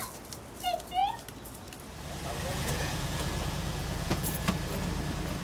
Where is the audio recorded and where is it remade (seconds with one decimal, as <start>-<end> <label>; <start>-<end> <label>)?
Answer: 0.0-2.5 recorded; 2.5-4.4 remade; 4.4-5.4 recorded